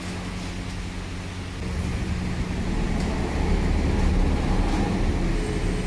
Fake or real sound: real